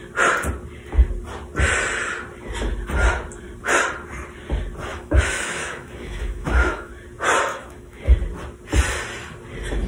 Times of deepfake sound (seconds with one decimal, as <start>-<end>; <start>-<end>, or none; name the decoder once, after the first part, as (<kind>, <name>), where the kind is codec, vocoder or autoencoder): 4.9-6.9 (autoencoder, DAC-VAE); 7.5-8.0